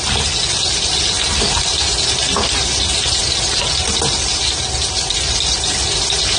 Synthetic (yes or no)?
no